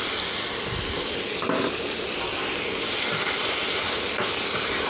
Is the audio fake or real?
real